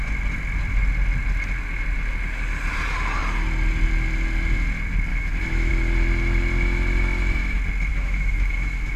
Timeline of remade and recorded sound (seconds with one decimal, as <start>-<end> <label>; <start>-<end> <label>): 0.0-5.1 recorded; 5.1-5.7 remade; 5.7-7.9 recorded; 7.9-9.0 remade